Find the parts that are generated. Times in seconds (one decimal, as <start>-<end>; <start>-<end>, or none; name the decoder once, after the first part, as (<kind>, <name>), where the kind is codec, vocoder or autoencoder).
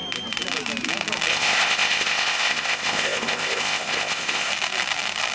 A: 1.3-4.5 (codec, ZipCodec)